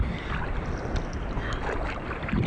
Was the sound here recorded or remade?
recorded